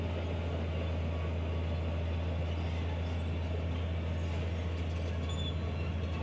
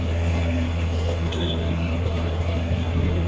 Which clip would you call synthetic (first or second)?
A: second